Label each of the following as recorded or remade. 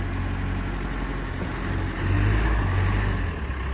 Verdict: recorded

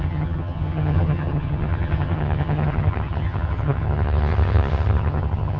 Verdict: remade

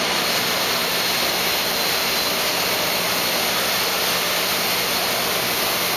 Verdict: recorded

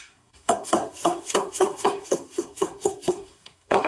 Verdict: remade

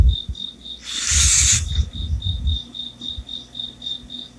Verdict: recorded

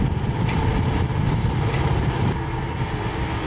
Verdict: recorded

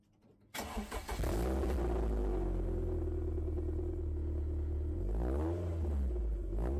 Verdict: recorded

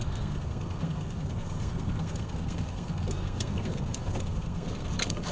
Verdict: remade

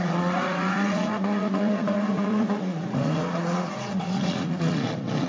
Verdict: remade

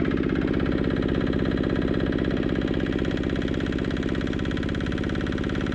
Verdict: recorded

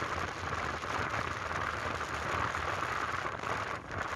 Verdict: remade